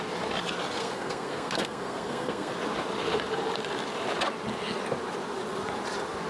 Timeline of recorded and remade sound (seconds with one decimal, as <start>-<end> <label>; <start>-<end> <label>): 0.0-0.8 recorded; 0.8-2.5 remade; 2.5-6.3 recorded